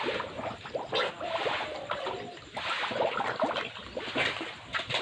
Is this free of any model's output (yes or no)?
yes